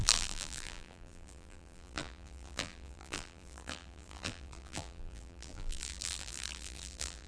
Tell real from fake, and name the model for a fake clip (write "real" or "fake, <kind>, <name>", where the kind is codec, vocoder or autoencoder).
fake, vocoder, BigVGAN v2